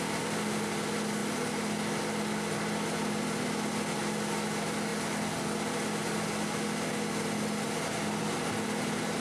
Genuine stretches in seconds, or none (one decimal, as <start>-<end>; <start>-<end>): 0.0-9.2